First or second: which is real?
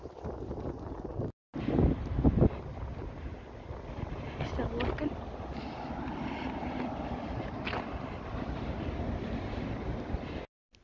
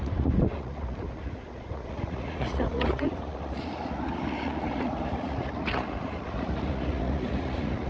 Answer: first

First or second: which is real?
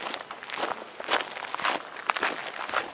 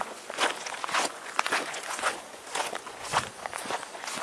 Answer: first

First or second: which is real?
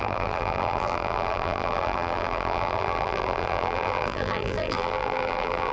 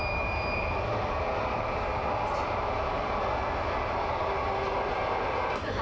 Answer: second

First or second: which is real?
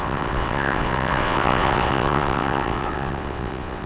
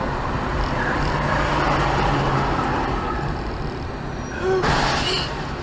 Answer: second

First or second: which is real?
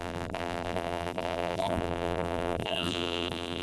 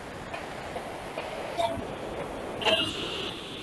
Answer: second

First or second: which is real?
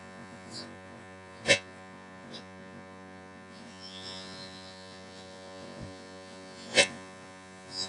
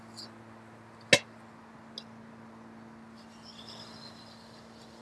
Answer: second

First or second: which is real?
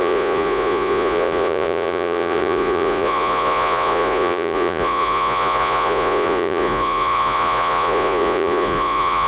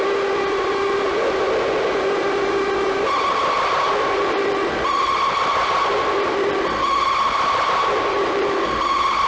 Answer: second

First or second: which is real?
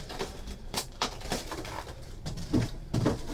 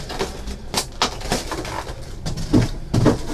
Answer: second